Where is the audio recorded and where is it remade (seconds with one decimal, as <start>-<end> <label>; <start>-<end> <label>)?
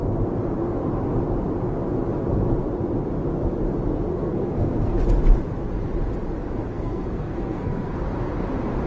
0.0-4.1 recorded; 4.1-5.0 remade; 5.0-6.6 recorded; 6.6-8.3 remade; 8.3-8.9 recorded